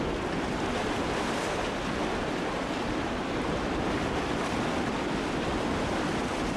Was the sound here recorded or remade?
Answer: recorded